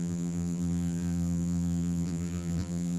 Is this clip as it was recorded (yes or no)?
no